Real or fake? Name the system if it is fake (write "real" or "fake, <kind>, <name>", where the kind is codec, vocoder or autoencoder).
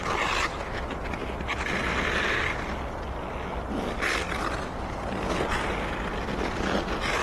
real